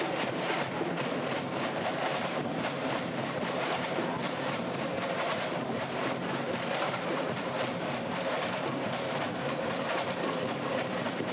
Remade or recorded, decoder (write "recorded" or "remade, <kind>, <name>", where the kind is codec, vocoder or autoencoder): remade, vocoder, BigVGAN v2